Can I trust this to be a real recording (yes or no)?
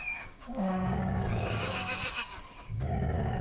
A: no